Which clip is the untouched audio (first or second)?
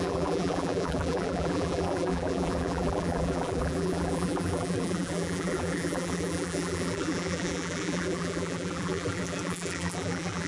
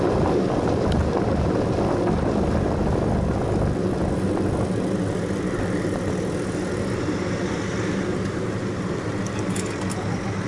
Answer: second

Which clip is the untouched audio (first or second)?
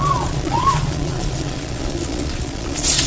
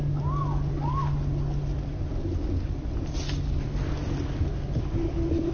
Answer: second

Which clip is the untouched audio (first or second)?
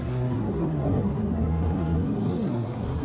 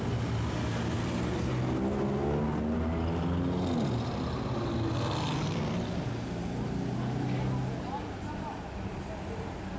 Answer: second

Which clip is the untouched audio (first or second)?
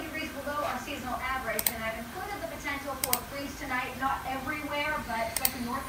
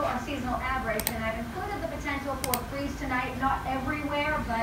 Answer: second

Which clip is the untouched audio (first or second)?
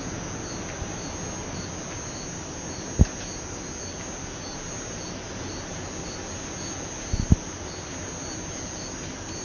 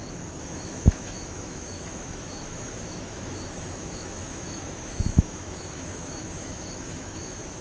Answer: first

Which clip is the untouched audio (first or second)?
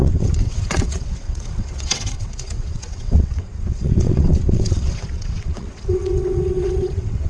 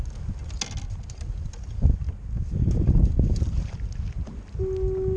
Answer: second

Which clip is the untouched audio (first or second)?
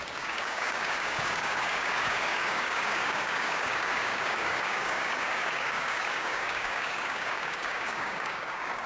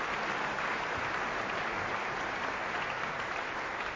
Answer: second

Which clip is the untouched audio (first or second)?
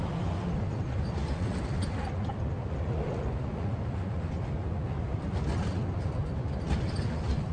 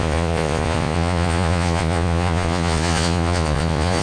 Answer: first